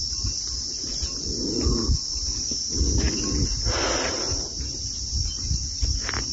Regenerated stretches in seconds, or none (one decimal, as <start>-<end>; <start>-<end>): none